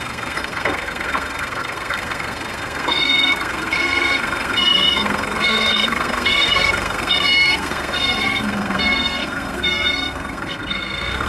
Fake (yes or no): yes